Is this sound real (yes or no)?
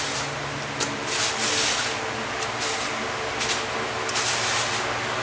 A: yes